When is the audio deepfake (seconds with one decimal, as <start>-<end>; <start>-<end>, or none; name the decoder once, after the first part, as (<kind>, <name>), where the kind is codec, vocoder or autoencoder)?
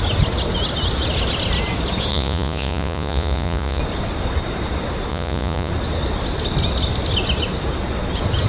2.1-3.8 (vocoder, Vocos); 5.1-5.7